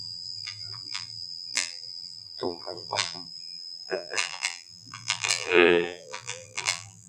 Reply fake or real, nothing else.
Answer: fake